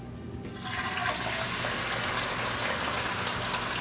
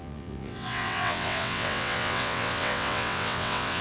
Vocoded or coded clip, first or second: second